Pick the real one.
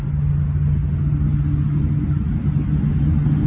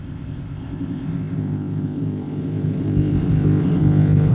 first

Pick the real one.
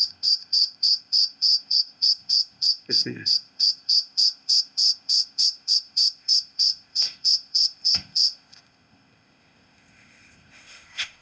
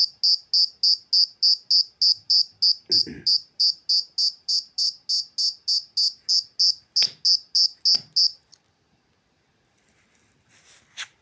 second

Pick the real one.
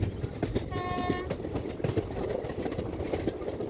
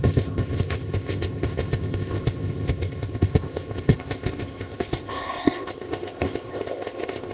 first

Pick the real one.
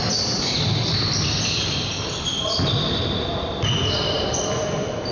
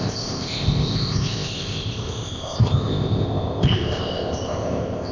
first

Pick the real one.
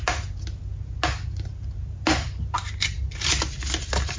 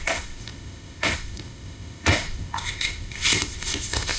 first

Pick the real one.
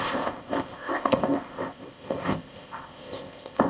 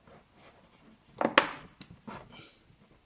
second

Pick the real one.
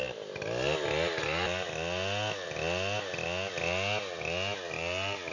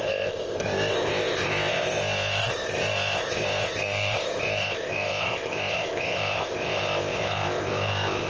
first